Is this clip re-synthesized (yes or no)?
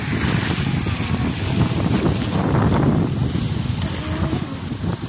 no